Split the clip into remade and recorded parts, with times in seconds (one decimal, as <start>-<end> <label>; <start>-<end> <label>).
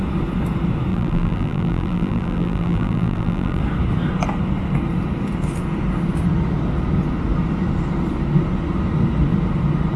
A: 0.0-0.9 recorded; 0.9-3.6 remade; 3.6-10.0 recorded